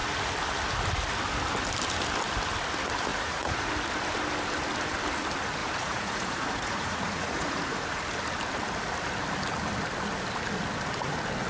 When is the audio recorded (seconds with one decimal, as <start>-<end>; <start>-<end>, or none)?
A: 0.0-3.1; 3.7-5.6; 8.0-11.5